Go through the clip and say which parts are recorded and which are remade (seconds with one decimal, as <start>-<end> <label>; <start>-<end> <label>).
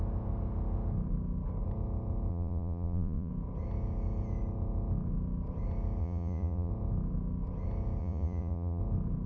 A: 0.0-2.3 recorded; 2.3-3.3 remade; 3.3-6.0 recorded; 6.0-6.7 remade; 6.7-8.0 recorded; 8.0-8.8 remade; 8.8-9.3 recorded